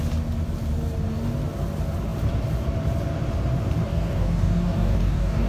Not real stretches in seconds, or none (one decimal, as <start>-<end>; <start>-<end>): 3.9-5.5